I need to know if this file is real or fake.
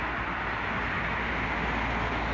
real